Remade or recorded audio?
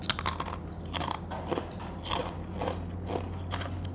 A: recorded